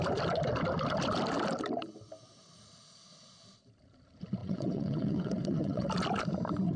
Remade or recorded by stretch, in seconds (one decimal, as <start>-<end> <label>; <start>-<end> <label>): 0.0-4.4 recorded; 4.4-5.9 remade; 5.9-6.8 recorded